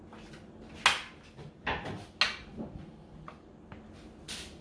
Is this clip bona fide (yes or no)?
yes